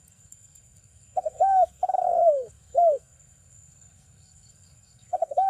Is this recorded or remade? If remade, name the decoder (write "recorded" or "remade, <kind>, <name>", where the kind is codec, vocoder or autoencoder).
remade, codec, SNAC